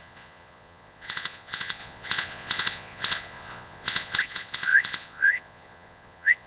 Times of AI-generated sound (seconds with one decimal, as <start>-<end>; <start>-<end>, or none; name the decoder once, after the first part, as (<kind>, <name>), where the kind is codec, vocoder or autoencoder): 0.0-6.5 (vocoder, Vocos)